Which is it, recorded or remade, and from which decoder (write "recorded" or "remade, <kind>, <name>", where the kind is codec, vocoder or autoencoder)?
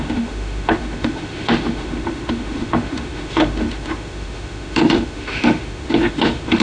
remade, autoencoder, DAC-VAE